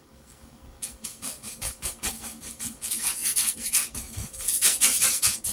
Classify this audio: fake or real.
fake